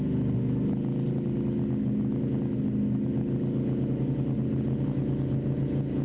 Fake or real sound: real